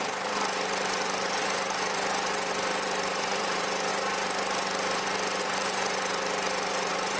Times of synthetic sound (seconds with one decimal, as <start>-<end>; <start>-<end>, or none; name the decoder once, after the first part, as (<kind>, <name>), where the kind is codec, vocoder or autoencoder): 0.0-3.9 (vocoder, BigVGAN v2); 5.4-7.2